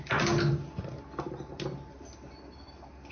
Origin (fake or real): real